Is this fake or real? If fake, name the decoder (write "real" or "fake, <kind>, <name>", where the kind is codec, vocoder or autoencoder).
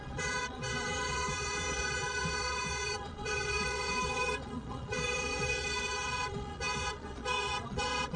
fake, vocoder, Vocos